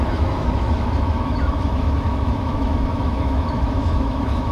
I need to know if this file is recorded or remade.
remade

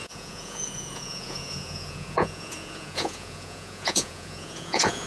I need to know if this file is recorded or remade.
remade